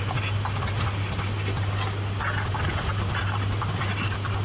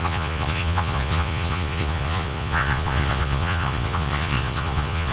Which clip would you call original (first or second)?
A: first